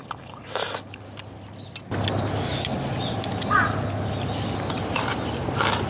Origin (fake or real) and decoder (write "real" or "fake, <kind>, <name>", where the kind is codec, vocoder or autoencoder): real